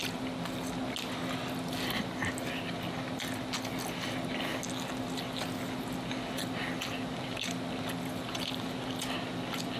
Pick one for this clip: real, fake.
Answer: real